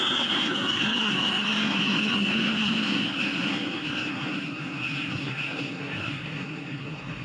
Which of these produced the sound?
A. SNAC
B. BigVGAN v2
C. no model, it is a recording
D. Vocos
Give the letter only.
A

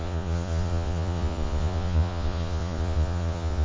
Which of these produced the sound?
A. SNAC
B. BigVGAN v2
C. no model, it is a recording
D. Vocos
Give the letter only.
D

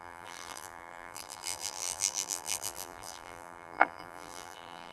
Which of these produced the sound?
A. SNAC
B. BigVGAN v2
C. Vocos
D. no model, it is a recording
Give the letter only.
B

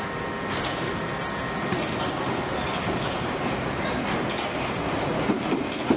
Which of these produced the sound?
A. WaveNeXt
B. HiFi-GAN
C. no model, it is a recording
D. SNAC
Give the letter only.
C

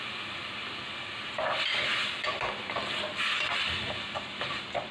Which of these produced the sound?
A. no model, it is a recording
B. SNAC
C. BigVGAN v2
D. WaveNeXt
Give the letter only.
A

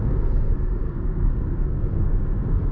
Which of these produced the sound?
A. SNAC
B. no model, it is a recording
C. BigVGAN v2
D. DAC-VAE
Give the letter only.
A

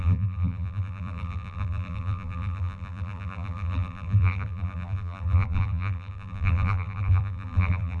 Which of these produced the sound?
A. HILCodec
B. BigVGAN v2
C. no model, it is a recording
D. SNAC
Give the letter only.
B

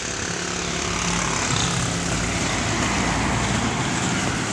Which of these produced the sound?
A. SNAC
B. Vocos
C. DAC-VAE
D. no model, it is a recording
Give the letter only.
D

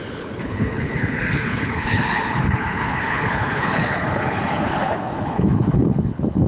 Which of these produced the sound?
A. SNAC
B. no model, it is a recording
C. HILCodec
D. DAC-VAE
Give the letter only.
C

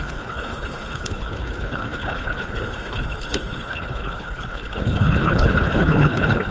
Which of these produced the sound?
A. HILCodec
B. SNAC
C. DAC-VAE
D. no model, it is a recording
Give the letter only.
A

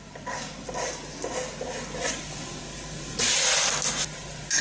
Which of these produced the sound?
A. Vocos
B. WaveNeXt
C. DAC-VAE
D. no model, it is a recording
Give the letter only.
D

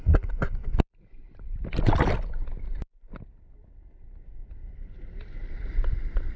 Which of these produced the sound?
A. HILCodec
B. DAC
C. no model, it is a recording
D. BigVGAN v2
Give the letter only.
D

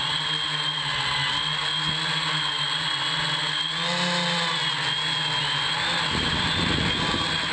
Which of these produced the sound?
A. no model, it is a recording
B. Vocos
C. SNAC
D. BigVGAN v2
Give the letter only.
A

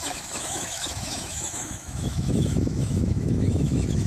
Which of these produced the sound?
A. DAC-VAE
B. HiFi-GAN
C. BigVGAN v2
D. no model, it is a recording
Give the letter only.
A